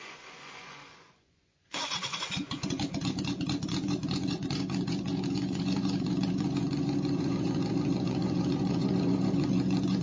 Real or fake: fake